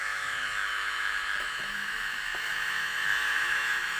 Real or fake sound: fake